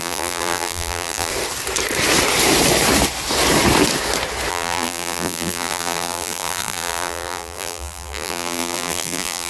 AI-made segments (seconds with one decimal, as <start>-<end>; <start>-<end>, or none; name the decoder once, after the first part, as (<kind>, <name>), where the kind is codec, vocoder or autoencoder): 0.0-1.3 (vocoder, BigVGAN v2); 4.5-9.5